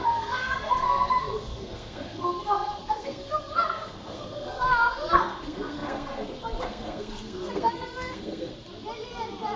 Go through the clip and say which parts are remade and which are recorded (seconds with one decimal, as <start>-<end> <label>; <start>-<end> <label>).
0.0-8.5 remade; 8.5-9.6 recorded